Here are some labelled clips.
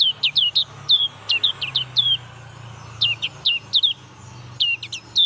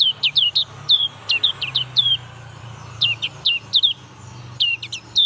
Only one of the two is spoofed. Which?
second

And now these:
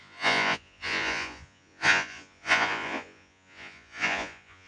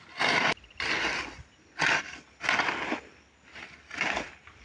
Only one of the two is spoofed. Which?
first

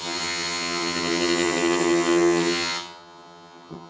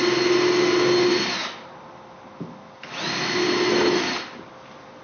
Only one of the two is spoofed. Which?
first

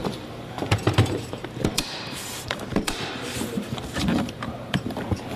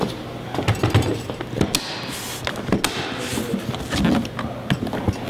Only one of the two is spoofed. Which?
first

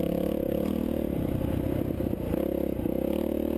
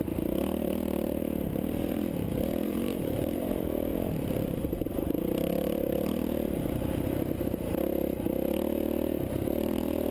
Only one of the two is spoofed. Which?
second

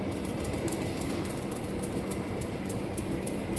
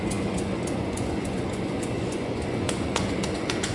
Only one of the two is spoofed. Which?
second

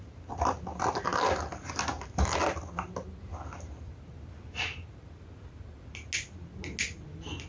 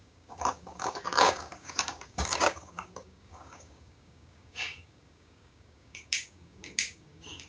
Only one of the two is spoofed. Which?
second